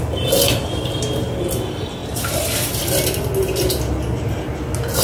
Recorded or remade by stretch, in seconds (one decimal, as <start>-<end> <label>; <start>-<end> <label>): 0.0-5.0 recorded